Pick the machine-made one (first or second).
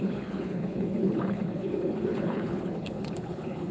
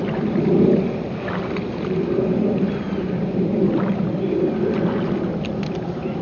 first